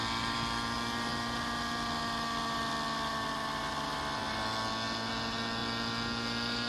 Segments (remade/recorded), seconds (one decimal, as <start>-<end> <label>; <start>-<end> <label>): 0.0-6.7 recorded

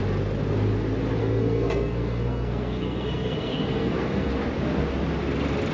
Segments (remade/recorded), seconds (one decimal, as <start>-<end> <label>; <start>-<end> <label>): 0.0-1.2 recorded; 1.2-4.3 remade; 4.3-5.7 recorded

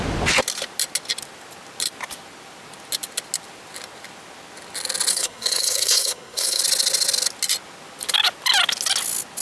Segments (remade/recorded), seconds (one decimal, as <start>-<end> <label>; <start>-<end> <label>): 0.0-5.1 recorded; 5.1-6.6 remade; 6.6-9.4 recorded

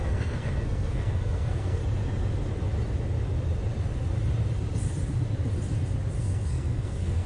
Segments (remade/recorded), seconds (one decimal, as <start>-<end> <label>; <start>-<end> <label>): 0.0-1.8 remade; 1.8-6.2 recorded; 6.2-7.3 remade

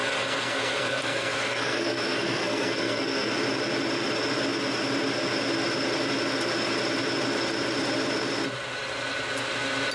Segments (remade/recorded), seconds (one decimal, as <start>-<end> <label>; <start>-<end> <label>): 0.0-3.3 remade; 3.3-9.9 recorded

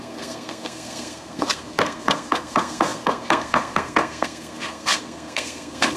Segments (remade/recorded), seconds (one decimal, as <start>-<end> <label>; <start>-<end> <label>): 0.0-6.0 remade

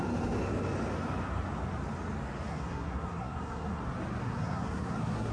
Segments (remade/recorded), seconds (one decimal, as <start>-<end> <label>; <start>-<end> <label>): 0.0-2.5 recorded; 2.5-3.8 remade; 3.8-4.2 recorded; 4.2-5.3 remade

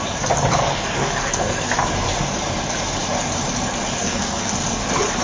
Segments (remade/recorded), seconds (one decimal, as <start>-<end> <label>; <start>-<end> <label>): 0.0-0.6 recorded; 0.6-1.7 remade; 1.7-4.0 recorded; 4.0-4.5 remade; 4.5-5.2 recorded